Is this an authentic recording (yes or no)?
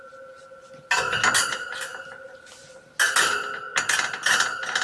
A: yes